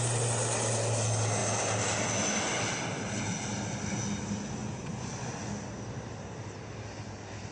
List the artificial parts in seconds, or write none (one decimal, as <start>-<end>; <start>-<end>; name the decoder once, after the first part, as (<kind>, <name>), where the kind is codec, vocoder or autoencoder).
4.6-5.3 (vocoder, Vocos)